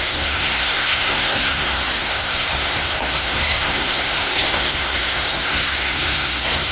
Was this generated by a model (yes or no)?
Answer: yes